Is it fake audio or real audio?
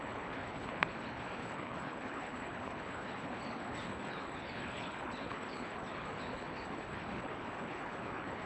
fake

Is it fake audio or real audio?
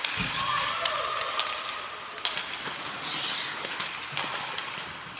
real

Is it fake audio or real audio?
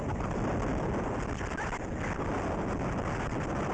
real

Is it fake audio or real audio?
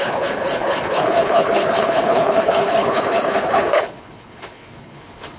fake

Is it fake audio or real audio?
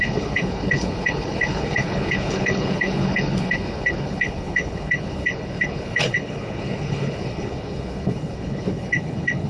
fake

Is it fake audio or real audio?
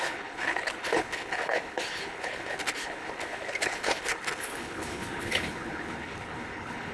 fake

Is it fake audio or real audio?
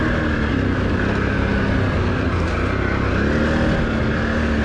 real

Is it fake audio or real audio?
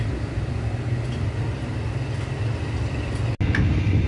real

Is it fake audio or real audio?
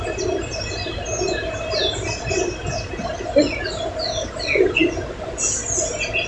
real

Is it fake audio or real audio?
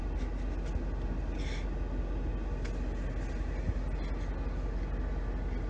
real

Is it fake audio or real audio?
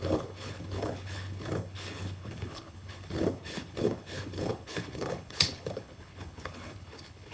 fake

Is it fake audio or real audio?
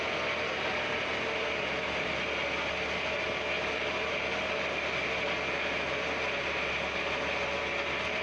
real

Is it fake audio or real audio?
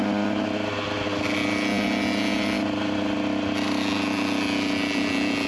real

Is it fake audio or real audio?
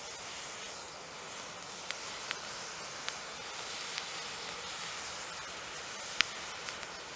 real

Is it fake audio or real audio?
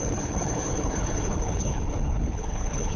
fake